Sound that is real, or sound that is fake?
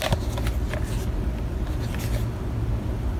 real